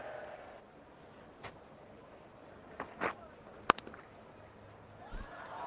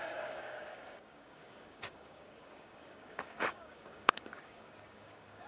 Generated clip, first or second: second